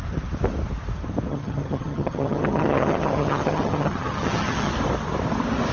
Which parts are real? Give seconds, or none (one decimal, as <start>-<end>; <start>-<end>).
0.0-1.3; 4.7-5.7

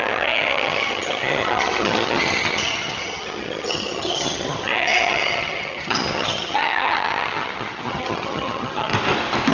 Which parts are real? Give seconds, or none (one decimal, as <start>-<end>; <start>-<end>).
8.9-9.5

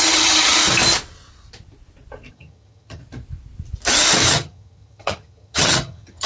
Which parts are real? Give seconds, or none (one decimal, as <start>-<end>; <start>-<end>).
0.6-2.3; 3.0-4.3

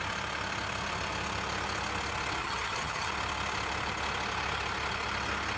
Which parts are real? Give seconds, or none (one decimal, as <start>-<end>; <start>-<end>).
0.0-2.4; 3.1-5.6

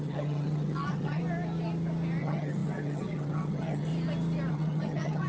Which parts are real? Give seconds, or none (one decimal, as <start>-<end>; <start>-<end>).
1.2-2.2; 3.9-4.5

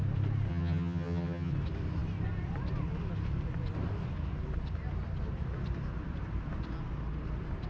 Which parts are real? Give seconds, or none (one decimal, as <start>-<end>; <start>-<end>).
0.0-0.5; 1.5-7.7